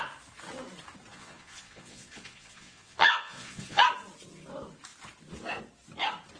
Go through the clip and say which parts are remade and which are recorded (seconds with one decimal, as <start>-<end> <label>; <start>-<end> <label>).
0.0-1.1 recorded; 1.1-3.8 remade; 3.8-6.4 recorded